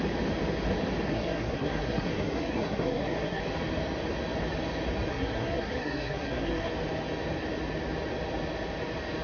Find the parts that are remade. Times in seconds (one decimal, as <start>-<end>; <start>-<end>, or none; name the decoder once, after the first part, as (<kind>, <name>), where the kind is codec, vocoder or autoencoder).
1.1-3.4 (codec, SNAC); 5.1-6.7